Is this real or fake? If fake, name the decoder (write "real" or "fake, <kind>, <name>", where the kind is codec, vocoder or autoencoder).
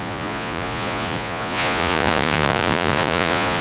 fake, vocoder, Vocos